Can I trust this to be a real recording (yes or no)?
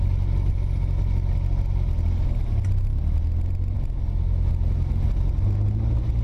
yes